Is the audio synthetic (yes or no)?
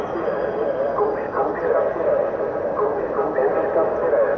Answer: no